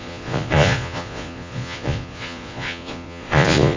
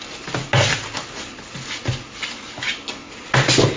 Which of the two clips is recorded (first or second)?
second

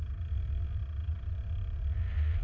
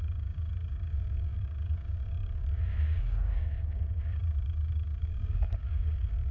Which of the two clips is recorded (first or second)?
first